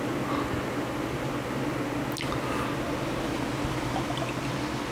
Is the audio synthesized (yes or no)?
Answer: no